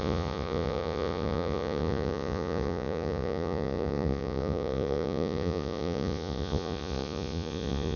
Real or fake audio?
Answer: fake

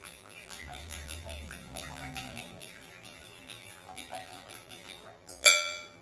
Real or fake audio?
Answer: fake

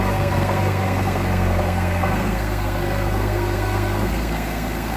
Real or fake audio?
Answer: fake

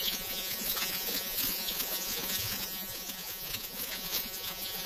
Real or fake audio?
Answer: fake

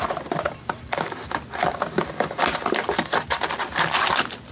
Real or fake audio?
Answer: real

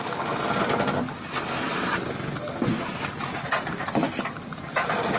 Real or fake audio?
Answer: real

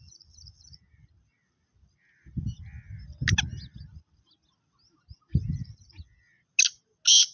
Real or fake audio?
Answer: real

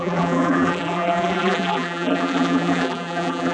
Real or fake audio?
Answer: fake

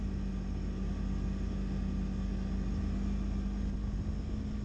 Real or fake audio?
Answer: real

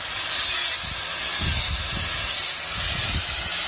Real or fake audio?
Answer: real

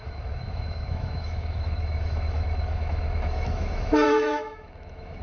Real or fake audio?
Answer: fake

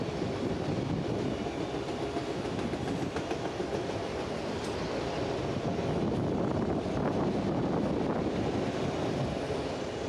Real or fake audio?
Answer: real